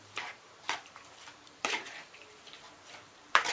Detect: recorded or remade remade